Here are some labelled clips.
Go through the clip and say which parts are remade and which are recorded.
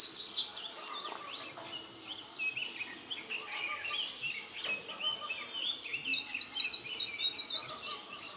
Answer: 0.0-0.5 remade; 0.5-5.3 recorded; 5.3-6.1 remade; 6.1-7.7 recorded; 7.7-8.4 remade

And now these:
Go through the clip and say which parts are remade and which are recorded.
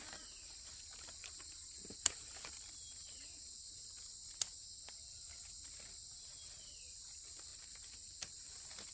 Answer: 0.0-1.2 recorded; 1.2-2.7 remade; 2.7-7.5 recorded; 7.5-8.5 remade; 8.5-8.9 recorded